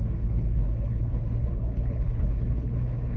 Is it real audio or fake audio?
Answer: fake